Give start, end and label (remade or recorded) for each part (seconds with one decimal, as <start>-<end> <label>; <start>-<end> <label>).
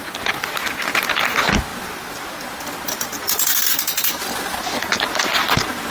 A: 0.0-5.9 recorded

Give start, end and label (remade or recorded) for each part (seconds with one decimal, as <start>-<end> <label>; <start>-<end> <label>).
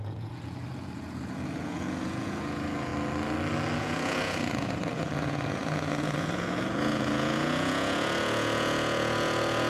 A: 0.0-2.9 remade; 2.9-3.8 recorded; 3.8-9.7 remade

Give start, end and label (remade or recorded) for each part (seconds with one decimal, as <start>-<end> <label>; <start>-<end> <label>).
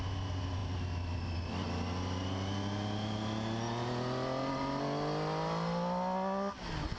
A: 0.0-7.0 recorded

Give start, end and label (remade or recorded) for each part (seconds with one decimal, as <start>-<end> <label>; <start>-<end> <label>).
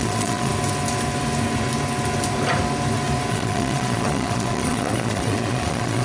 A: 0.0-0.5 remade; 0.5-3.3 recorded; 3.3-6.0 remade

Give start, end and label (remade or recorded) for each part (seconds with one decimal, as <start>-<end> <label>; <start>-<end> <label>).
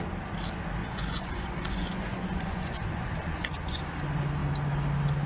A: 0.0-0.8 recorded; 0.8-3.8 remade; 3.8-5.3 recorded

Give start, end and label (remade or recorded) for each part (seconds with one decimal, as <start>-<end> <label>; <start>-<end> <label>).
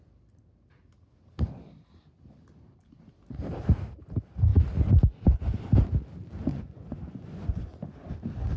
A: 0.0-6.5 recorded; 6.5-7.6 remade; 7.6-8.6 recorded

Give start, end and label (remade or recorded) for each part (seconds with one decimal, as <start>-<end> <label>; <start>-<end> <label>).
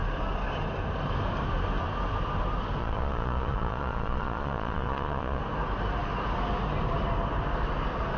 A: 0.0-2.8 recorded; 2.8-5.4 remade; 5.4-8.2 recorded